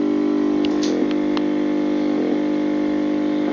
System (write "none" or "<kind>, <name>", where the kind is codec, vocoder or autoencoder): none